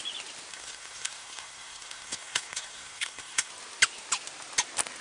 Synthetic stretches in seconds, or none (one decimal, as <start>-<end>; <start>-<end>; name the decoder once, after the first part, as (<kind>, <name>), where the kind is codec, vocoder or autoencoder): 0.5-3.5 (codec, SNAC)